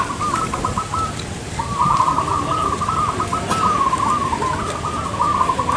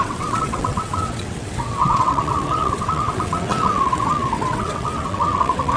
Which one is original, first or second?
first